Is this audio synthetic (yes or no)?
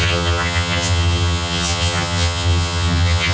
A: yes